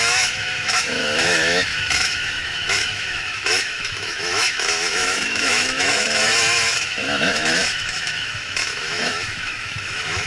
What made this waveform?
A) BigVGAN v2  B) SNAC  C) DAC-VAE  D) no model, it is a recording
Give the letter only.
C